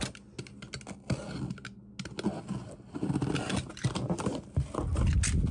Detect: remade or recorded recorded